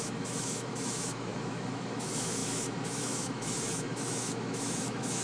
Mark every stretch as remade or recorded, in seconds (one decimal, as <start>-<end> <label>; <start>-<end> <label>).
0.0-5.2 remade